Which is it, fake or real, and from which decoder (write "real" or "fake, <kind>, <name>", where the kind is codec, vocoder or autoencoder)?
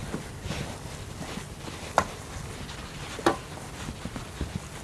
real